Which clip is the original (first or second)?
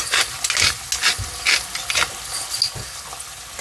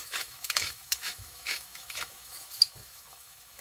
first